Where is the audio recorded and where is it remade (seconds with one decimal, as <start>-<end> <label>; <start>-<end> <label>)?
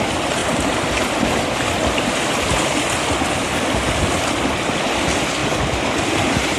0.0-6.6 recorded